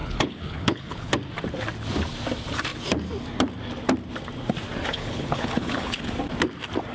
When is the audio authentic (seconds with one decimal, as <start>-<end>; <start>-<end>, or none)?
1.1-4.9; 6.0-6.9